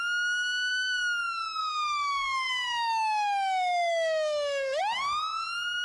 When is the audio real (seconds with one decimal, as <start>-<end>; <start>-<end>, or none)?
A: 0.0-1.6; 4.8-5.8